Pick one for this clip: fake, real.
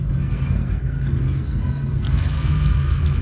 fake